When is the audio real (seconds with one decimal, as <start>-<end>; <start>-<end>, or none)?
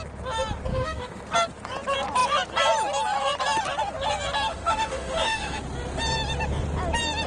0.0-0.7; 1.2-4.5; 5.6-7.3